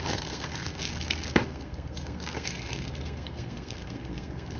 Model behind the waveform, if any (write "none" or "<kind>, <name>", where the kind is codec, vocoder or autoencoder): codec, SNAC